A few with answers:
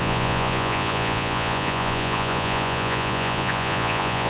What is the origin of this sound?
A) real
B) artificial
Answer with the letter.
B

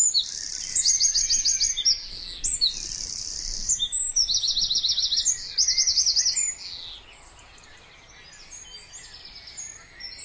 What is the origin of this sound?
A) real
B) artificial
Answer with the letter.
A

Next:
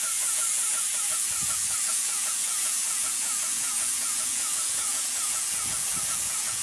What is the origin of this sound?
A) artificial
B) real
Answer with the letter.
A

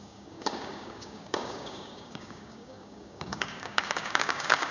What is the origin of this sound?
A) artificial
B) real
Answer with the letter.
A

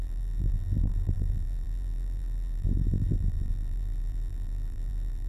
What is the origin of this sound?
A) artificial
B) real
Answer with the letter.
A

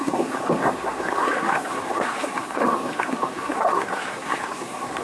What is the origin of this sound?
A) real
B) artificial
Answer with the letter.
B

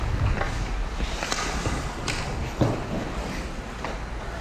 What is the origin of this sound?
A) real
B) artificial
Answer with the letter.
A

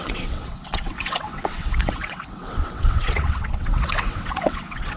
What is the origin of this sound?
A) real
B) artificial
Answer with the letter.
B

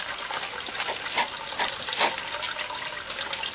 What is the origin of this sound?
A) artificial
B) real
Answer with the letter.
B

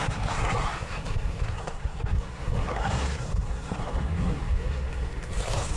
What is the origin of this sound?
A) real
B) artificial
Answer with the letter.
B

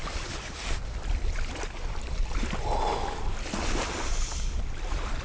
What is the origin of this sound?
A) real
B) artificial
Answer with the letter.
A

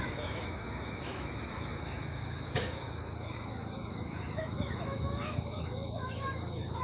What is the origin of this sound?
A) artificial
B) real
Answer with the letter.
A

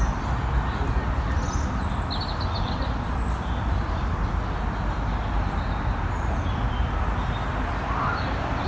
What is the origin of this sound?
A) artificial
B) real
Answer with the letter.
B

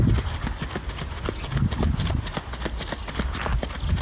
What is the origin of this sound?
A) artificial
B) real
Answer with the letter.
B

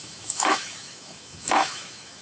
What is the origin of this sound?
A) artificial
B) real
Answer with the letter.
A